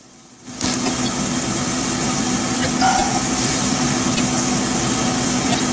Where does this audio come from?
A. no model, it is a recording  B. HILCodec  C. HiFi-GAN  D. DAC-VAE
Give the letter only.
A